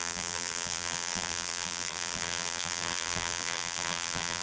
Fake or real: fake